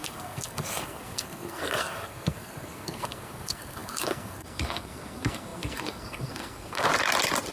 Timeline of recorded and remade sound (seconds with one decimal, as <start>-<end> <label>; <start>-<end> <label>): 0.0-6.9 remade; 6.9-7.5 recorded

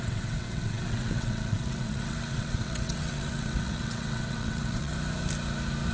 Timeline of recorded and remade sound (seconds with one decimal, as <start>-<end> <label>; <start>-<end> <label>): 0.0-4.9 remade; 4.9-5.9 recorded